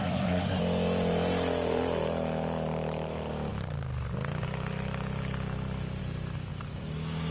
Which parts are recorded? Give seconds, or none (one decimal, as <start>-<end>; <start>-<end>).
0.6-7.3